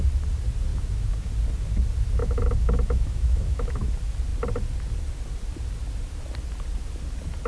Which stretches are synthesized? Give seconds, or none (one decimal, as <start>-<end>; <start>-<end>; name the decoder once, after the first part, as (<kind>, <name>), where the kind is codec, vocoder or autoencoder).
0.7-1.3 (autoencoder, DAC-VAE); 2.2-3.9